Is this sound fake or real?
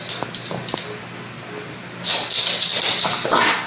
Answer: real